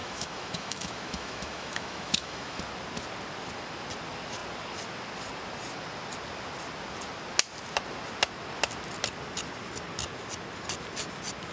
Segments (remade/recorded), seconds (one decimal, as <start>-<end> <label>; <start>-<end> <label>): 0.0-2.6 remade; 2.6-11.5 recorded